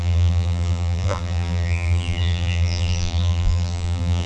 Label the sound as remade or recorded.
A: remade